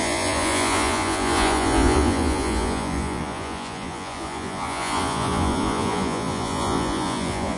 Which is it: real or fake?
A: fake